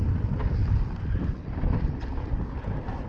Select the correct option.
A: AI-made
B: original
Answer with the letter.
B